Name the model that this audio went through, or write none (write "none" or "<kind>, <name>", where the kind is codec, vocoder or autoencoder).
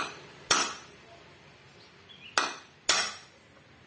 none